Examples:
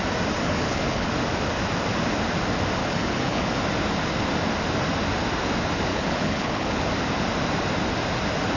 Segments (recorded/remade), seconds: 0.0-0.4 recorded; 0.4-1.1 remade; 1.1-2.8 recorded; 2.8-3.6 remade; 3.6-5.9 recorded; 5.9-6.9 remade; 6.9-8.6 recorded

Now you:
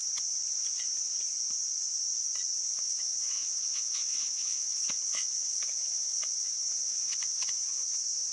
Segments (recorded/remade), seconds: 0.0-2.7 recorded; 2.7-8.3 remade